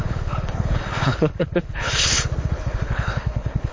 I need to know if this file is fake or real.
fake